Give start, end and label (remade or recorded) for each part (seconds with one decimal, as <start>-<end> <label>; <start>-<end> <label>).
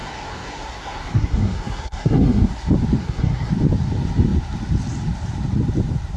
0.0-2.5 remade; 2.5-3.0 recorded; 3.0-3.5 remade; 3.5-6.2 recorded